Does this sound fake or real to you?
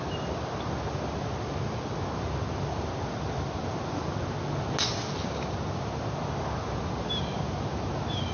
real